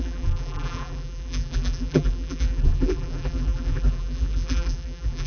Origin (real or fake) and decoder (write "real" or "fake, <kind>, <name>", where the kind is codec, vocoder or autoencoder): fake, vocoder, BigVGAN v2